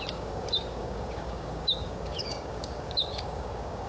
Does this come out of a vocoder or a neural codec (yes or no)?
yes